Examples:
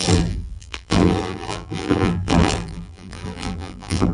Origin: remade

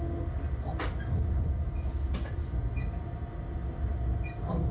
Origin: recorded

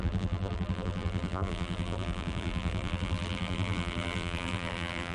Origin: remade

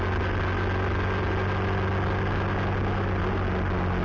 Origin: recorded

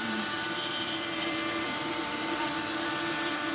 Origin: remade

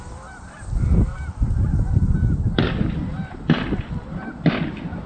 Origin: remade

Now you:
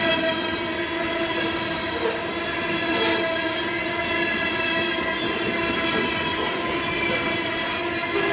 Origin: recorded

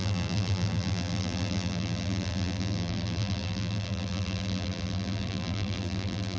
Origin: remade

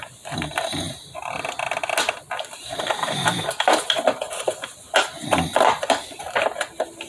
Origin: remade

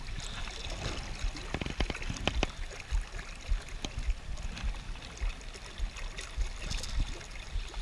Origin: recorded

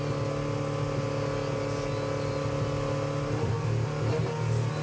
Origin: recorded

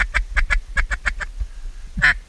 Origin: recorded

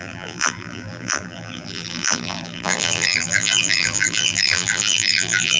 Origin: remade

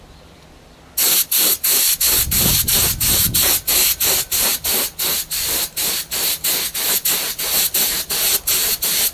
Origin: recorded